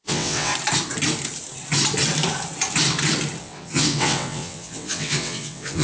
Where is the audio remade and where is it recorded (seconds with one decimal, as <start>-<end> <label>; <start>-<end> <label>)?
0.0-0.5 remade; 0.5-3.4 recorded; 3.4-5.8 remade